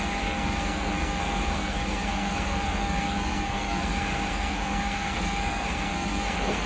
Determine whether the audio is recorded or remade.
remade